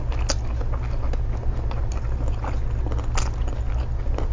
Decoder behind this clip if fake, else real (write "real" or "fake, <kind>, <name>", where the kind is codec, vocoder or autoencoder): real